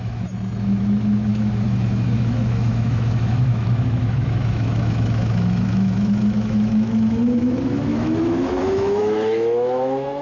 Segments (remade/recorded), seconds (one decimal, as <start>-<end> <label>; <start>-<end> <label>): 0.0-10.2 remade